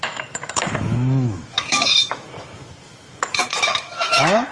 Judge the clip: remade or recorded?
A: remade